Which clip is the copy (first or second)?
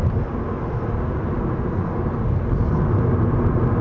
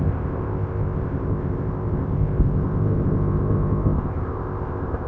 second